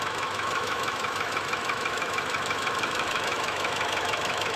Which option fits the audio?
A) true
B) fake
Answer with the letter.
B